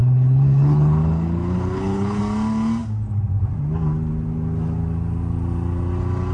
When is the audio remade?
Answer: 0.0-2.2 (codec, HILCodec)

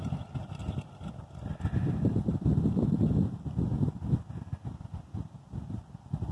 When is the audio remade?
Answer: none